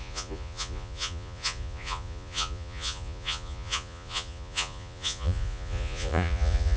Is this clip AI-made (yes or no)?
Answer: yes